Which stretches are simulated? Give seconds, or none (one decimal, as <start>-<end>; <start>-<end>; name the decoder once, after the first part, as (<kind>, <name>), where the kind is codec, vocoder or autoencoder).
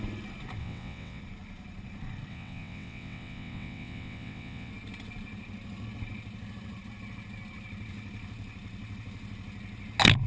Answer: 0.6-1.2 (vocoder, WaveNeXt); 2.3-4.7